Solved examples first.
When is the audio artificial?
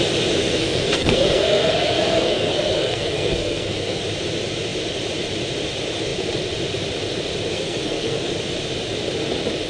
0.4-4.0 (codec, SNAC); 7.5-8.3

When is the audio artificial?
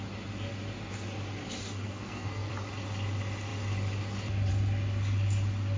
1.6-2.5 (codec, SNAC)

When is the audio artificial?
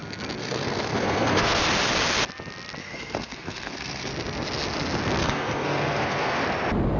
0.4-1.6 (codec, SNAC); 2.8-4.1; 5.2-6.4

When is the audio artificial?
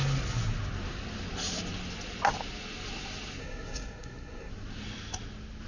3.4-4.5 (codec, SNAC)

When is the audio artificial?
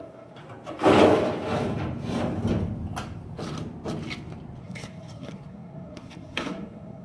0.0-0.4 (codec, SNAC); 4.6-7.0